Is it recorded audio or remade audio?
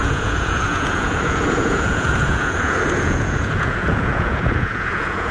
remade